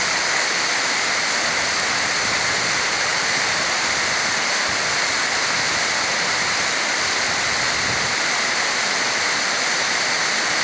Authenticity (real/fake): real